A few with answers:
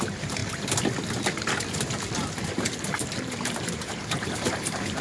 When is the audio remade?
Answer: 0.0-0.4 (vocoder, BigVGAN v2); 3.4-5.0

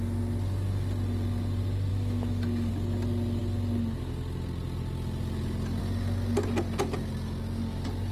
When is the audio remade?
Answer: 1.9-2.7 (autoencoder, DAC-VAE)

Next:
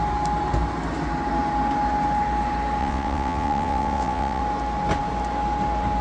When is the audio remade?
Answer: 2.8-4.4 (vocoder, WaveNeXt)

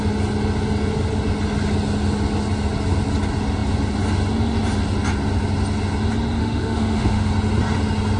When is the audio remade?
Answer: 6.4-7.3 (autoencoder, DAC-VAE)

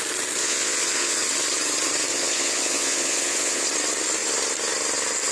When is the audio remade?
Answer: 0.4-1.2 (vocoder, Vocos); 2.1-3.6

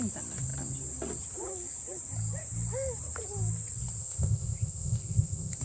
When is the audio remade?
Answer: 4.0-5.6 (codec, ZipCodec)

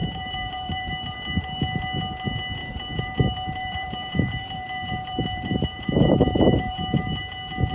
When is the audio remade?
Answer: 0.0-0.9 (vocoder, BigVGAN v2); 2.6-7.2

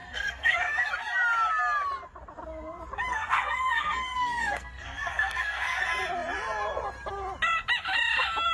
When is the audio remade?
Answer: 0.0-0.9 (codec, SNAC); 3.1-5.8